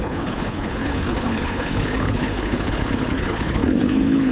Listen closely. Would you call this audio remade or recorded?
remade